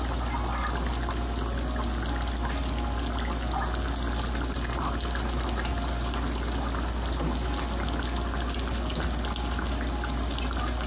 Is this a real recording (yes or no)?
yes